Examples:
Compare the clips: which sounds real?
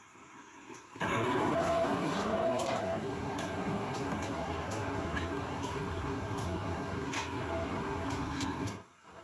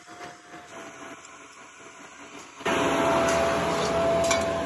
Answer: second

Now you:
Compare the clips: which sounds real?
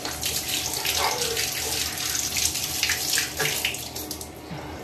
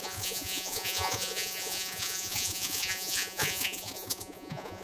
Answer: first